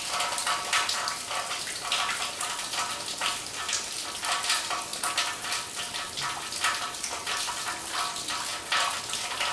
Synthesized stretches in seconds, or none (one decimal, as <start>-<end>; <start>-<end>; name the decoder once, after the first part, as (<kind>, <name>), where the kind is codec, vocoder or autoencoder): 3.2-3.9 (vocoder, BigVGAN v2); 8.5-9.0